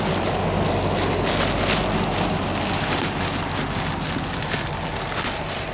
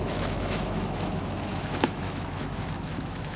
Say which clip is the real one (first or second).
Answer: first